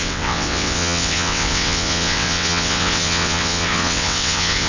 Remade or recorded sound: remade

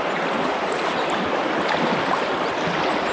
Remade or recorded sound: recorded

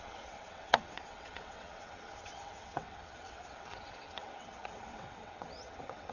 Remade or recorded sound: remade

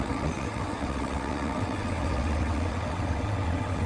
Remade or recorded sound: remade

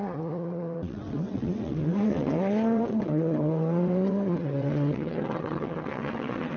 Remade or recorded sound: remade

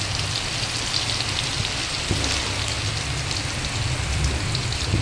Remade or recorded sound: recorded